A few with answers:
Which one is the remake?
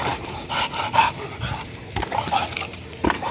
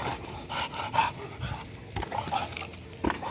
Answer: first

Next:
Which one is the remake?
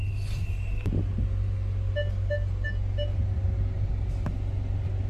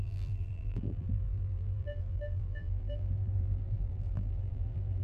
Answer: second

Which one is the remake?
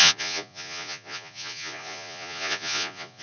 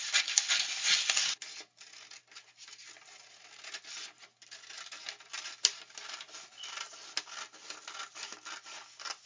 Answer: first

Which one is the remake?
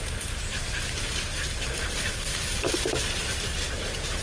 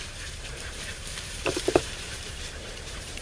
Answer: second